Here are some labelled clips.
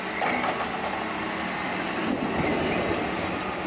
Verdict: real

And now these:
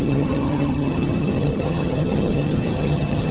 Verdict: fake